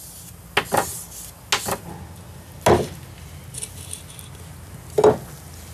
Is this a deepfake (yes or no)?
no